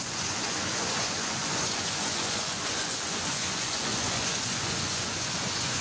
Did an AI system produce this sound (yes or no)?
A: yes